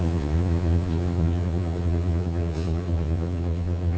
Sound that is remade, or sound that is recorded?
remade